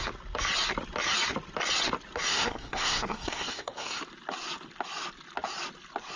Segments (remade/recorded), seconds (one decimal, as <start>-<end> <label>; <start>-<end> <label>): 0.0-2.3 recorded; 2.3-4.0 remade; 4.0-6.2 recorded